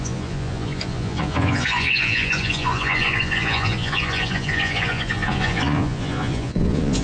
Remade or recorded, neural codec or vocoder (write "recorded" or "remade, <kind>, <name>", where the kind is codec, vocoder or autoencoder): remade, vocoder, Vocos